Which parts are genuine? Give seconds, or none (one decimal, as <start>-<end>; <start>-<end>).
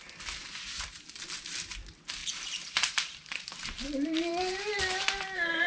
0.0-2.2